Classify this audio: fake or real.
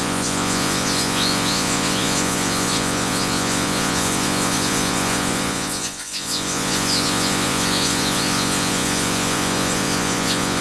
fake